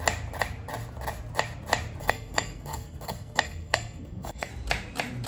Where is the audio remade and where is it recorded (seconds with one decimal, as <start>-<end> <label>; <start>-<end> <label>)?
0.0-2.0 recorded; 2.0-4.5 remade; 4.5-5.3 recorded